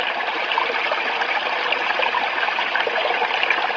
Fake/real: real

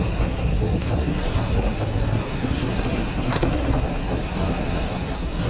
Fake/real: fake